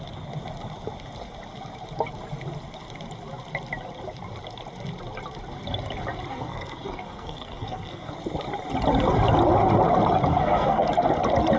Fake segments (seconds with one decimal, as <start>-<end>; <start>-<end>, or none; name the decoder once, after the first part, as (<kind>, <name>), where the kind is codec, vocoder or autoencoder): 6.3-8.1 (codec, SNAC); 10.3-10.9